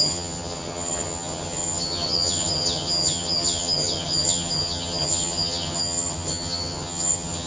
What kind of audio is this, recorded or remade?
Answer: remade